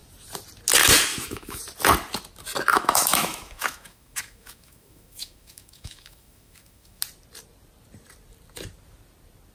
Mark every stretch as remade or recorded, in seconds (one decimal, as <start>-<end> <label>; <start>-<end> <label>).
0.0-1.1 recorded; 1.1-1.6 remade; 1.6-2.7 recorded; 2.7-7.0 remade; 7.0-9.5 recorded